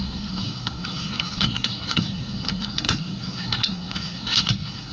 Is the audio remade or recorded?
remade